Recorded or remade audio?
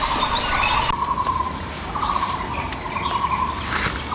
recorded